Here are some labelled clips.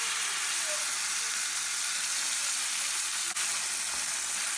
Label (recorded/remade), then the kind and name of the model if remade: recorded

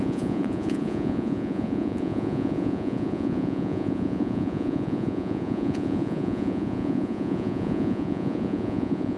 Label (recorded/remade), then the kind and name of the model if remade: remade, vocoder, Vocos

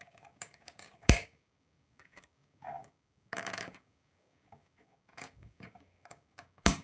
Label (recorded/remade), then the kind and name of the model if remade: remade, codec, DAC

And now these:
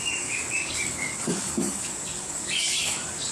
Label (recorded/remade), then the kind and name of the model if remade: remade, codec, DAC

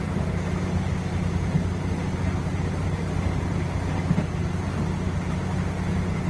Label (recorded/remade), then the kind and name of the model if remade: recorded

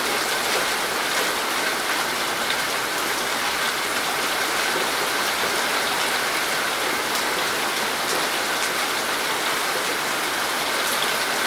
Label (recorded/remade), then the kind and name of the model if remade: recorded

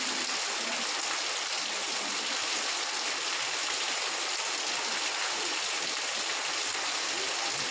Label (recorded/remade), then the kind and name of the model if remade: recorded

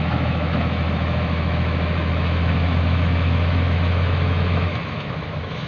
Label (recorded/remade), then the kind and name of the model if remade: remade, autoencoder, DAC-VAE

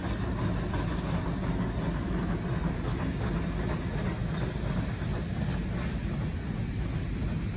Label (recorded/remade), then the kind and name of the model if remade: recorded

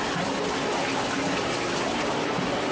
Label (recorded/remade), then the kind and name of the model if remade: recorded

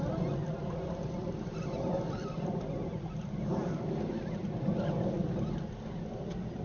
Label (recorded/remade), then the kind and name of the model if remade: recorded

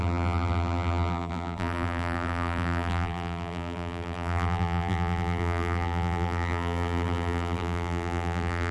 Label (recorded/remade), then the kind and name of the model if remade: remade, vocoder, BigVGAN v2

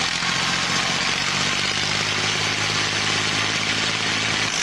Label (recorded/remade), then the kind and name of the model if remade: recorded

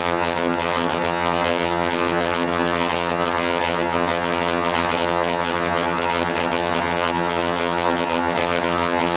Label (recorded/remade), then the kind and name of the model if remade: remade, vocoder, HiFi-GAN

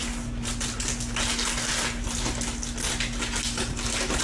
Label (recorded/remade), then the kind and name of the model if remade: recorded